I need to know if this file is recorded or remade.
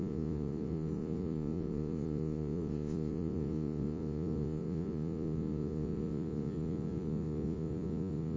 remade